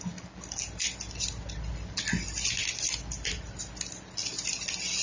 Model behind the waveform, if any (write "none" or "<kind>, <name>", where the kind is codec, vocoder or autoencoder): none